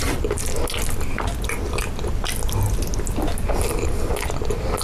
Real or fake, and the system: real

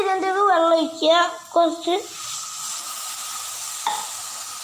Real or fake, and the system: real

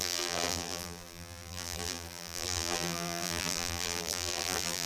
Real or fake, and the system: fake, vocoder, BigVGAN v2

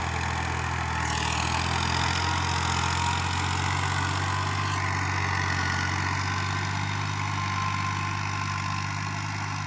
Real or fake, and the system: real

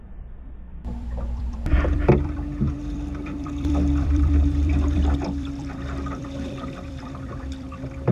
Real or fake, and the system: fake, vocoder, BigVGAN v2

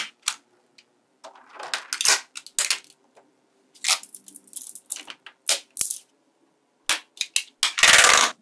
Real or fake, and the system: real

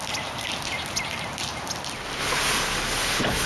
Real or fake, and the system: real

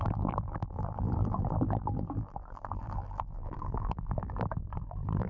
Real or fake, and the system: fake, vocoder, BigVGAN v2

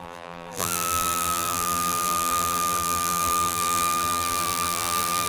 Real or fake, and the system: fake, vocoder, BigVGAN v2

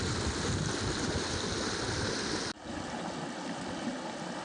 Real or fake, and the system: real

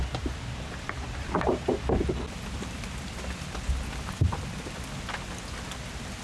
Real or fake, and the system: real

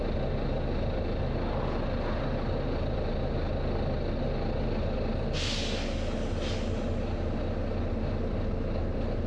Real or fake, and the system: real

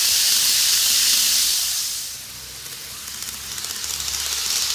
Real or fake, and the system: real